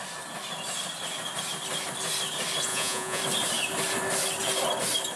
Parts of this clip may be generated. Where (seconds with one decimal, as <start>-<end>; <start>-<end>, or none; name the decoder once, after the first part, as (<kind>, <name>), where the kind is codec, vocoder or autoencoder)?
2.7-3.2 (vocoder, Vocos)